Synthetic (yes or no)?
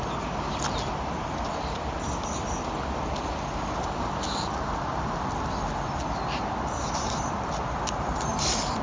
no